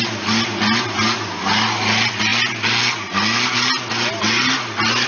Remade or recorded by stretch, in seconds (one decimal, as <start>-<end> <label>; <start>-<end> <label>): 0.0-5.1 recorded